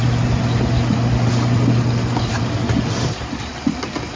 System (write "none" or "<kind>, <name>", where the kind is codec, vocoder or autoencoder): none